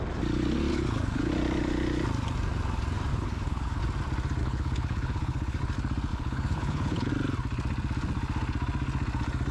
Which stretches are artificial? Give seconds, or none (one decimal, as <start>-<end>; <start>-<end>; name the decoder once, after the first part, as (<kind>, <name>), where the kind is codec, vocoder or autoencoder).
0.7-1.3 (codec, HILCodec); 3.1-3.8; 4.4-5.6; 6.1-7.1